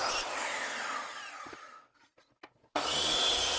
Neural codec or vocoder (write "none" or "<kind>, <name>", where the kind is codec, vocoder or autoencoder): none